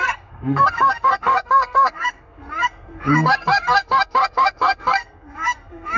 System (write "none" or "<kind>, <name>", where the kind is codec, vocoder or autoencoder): codec, SNAC